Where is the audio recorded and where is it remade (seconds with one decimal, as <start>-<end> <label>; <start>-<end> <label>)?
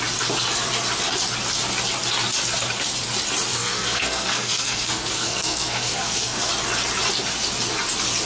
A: 0.0-3.5 recorded; 3.5-6.5 remade; 6.5-8.3 recorded